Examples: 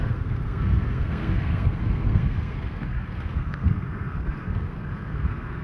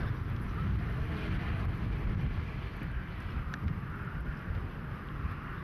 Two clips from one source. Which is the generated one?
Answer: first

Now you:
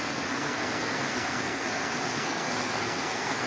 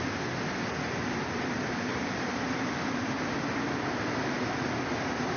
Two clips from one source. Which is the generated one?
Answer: first